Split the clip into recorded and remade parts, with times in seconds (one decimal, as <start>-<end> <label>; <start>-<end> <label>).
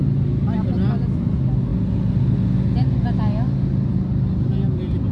0.0-5.1 recorded